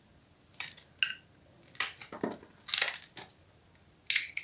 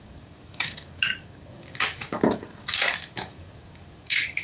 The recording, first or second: first